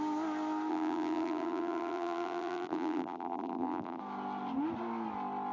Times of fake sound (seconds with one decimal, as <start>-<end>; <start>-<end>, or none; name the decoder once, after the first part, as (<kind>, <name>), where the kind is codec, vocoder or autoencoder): 0.7-4.0 (vocoder, BigVGAN v2)